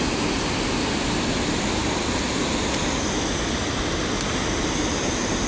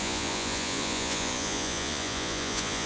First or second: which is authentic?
first